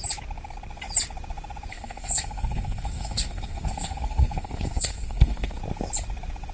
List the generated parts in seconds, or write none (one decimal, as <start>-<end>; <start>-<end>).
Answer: 1.7-5.6